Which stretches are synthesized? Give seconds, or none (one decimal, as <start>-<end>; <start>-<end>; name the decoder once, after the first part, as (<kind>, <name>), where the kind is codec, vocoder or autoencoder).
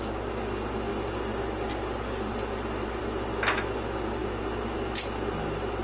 none